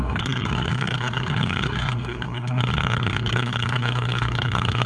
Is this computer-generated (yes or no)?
yes